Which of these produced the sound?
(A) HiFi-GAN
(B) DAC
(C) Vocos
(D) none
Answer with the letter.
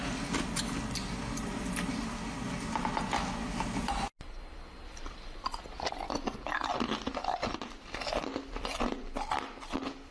D